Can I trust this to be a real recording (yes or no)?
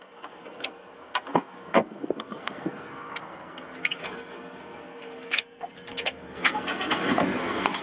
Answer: no